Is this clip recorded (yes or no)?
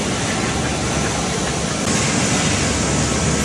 yes